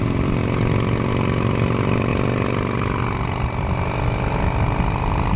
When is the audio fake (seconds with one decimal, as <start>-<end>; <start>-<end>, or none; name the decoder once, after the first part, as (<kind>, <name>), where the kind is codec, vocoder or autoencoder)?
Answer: 0.0-0.4 (vocoder, BigVGAN v2); 1.1-2.1